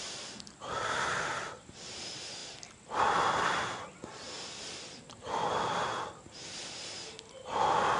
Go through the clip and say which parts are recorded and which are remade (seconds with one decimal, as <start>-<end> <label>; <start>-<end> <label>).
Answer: 0.0-8.0 recorded